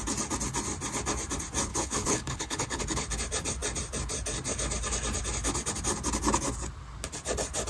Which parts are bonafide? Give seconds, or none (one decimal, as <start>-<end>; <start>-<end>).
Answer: 0.0-1.7; 2.8-7.7